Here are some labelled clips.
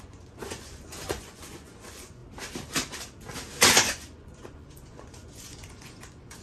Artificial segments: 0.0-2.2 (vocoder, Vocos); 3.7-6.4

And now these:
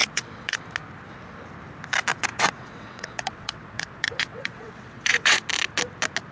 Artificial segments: 0.0-0.6 (vocoder, WaveNeXt); 2.3-5.5

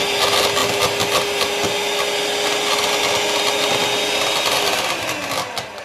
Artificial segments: none

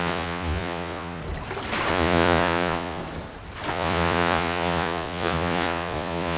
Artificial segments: 0.0-1.2 (vocoder, Vocos); 1.9-3.0; 3.7-6.4

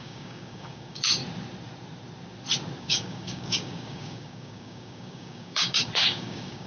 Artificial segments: 0.0-1.2 (codec, DAC); 2.8-6.7